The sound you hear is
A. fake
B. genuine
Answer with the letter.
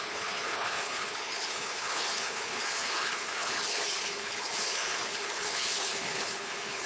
A